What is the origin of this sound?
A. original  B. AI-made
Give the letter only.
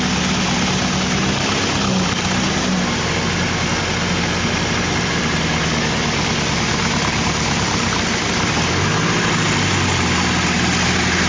A